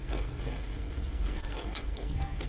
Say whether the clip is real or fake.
fake